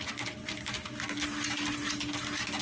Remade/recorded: recorded